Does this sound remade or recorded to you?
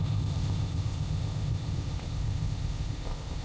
remade